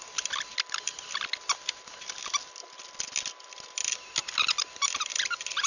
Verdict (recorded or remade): recorded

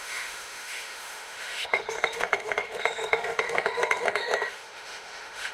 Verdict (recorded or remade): remade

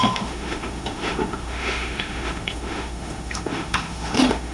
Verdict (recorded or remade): remade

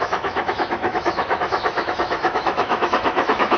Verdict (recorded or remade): remade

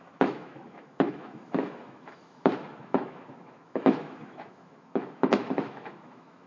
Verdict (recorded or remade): remade